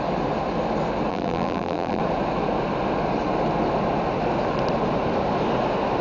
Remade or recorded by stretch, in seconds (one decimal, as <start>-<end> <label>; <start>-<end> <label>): 0.0-1.1 recorded; 1.1-2.0 remade; 2.0-6.0 recorded